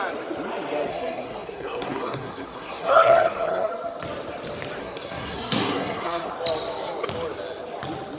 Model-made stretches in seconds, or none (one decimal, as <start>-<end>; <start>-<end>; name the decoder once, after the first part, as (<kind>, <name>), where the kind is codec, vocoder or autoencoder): 0.9-3.7 (codec, SNAC); 4.8-6.3